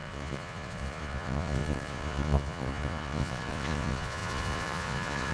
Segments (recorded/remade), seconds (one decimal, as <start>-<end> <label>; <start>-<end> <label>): 0.0-5.3 remade